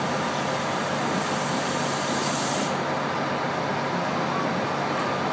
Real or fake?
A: real